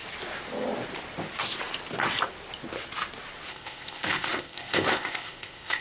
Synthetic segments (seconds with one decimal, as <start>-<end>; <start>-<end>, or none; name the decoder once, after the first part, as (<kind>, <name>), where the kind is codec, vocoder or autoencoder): 3.5-5.8 (codec, ZipCodec)